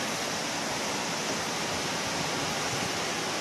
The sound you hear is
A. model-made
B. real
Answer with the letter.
B